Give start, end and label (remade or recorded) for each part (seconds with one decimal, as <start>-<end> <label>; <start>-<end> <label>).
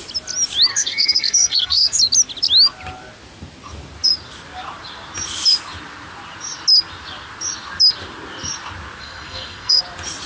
0.0-0.7 recorded; 0.7-2.0 remade; 2.0-9.0 recorded; 9.0-9.8 remade; 9.8-10.3 recorded